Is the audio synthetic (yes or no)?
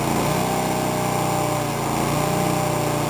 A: no